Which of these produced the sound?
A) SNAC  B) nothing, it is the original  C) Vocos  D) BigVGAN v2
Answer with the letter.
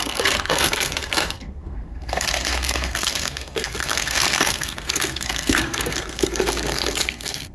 A